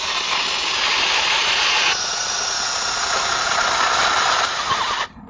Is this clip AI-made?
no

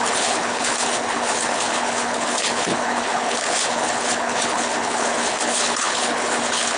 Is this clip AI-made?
yes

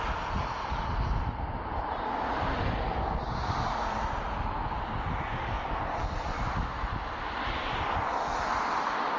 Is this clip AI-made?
no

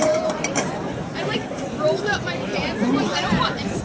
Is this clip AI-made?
yes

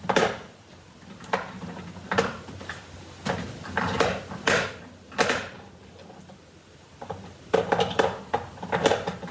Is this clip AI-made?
no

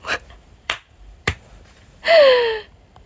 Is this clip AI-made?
yes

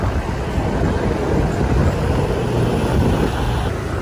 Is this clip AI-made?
no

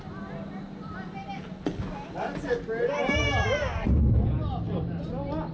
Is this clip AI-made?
no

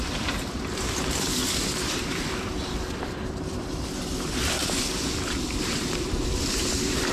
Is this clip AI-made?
yes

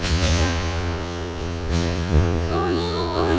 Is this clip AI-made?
yes